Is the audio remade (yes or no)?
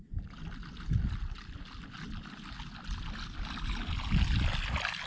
no